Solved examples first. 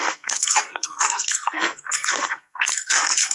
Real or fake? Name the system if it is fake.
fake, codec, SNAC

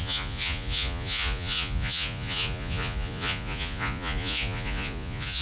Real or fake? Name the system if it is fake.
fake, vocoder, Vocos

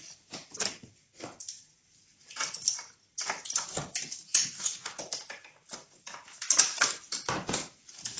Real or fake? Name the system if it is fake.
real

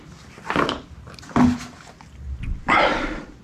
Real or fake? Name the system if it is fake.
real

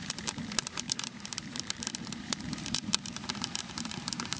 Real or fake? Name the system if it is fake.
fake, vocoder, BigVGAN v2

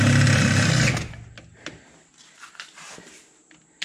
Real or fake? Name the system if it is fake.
fake, vocoder, BigVGAN v2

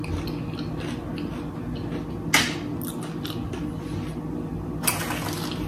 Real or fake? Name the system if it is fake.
real